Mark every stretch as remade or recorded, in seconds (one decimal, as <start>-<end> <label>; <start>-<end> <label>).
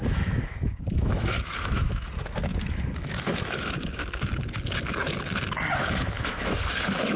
0.0-4.0 remade; 4.0-5.8 recorded; 5.8-7.2 remade